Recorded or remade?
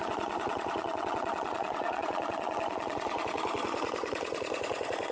remade